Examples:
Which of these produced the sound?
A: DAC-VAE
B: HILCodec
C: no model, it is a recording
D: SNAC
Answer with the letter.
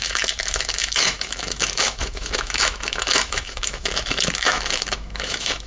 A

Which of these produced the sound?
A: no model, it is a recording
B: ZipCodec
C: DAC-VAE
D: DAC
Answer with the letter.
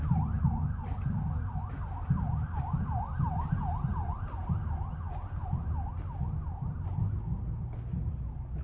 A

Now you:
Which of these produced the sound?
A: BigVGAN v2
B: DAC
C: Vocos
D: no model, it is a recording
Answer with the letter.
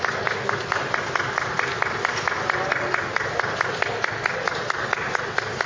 D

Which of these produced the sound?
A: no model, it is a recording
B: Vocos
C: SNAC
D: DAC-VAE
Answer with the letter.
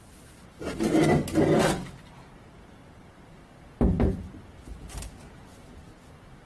A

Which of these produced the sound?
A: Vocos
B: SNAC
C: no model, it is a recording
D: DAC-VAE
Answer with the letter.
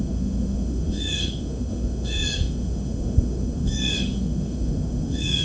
D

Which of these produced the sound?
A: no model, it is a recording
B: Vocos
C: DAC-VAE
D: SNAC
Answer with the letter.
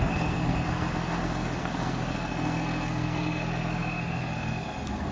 D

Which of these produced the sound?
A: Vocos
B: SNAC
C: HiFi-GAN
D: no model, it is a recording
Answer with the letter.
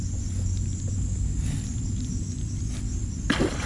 D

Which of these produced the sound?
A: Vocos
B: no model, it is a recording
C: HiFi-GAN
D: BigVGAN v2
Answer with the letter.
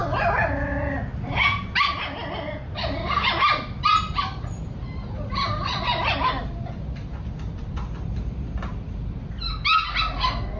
B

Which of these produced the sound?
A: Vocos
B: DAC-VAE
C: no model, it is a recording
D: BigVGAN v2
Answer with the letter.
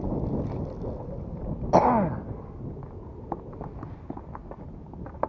C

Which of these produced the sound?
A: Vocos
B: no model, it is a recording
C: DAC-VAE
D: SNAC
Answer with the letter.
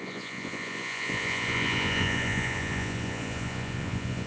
A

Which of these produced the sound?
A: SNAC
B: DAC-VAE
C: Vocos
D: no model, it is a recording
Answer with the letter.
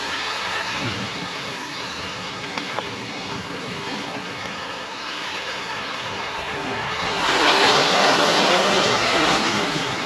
A